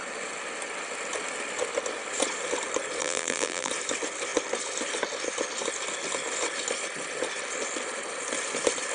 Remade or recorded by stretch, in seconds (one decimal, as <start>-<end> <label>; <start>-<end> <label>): 0.0-3.0 recorded; 3.0-3.7 remade; 3.7-8.9 recorded